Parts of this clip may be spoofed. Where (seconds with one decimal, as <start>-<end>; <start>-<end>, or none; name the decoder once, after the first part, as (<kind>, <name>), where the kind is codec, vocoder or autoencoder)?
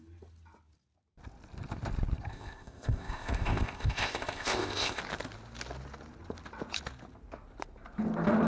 2.3-5.0 (codec, ZipCodec)